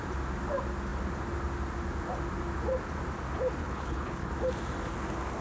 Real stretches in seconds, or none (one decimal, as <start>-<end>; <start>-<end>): 0.0-3.6; 4.3-5.4